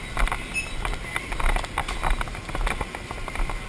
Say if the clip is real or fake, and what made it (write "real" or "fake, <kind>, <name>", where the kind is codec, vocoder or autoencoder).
real